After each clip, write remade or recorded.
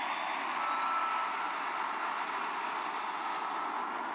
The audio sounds recorded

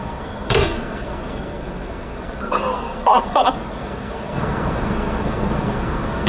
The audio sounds remade